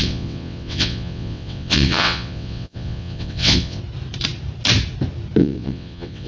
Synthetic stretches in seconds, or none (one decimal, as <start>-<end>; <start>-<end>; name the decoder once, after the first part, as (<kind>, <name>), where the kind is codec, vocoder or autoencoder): 0.0-3.8 (vocoder, WaveNeXt); 5.4-6.3

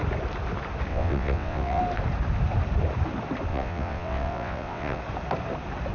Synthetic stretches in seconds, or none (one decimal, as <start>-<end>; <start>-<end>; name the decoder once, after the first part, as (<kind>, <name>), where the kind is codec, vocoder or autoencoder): 0.9-1.8 (vocoder, WaveNeXt); 3.5-5.0